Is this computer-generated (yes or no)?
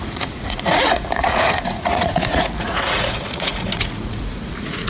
yes